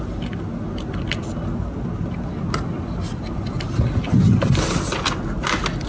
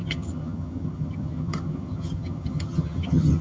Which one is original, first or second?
first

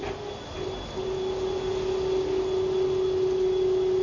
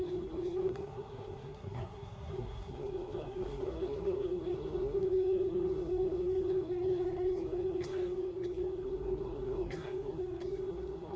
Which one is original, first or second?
first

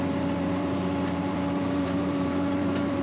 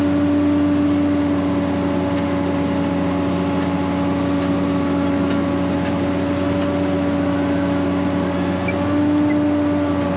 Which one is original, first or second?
second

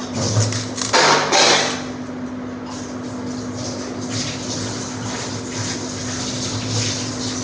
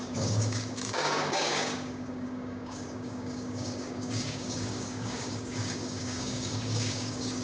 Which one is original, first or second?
first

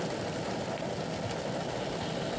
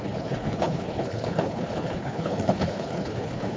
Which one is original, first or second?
first